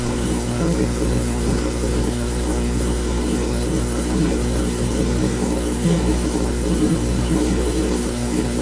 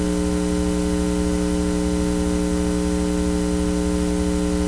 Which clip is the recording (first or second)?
second